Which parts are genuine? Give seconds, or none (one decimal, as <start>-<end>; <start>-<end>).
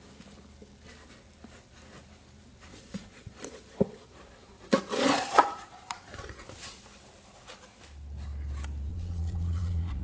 0.0-2.7; 6.8-8.9